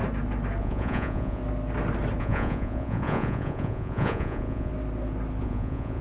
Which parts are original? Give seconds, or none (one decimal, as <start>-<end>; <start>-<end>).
0.0-0.6; 1.4-2.2; 4.7-5.4